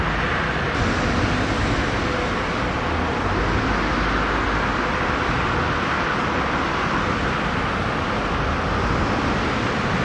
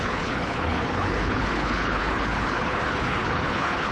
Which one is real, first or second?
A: first